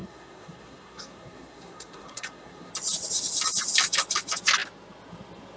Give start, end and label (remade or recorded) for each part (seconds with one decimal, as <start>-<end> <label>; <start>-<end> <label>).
0.0-2.7 remade; 2.7-5.6 recorded